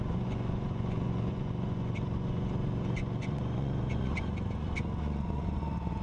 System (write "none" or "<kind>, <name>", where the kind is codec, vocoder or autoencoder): vocoder, Vocos